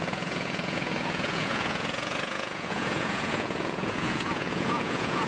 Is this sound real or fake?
fake